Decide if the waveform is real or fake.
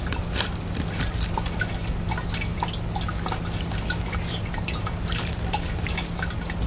real